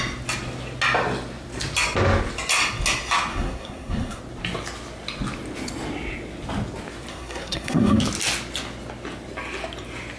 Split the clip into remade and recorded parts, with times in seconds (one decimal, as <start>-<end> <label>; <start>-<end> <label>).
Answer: 0.0-3.3 recorded; 3.3-4.2 remade; 4.2-7.1 recorded; 7.1-8.0 remade; 8.0-10.2 recorded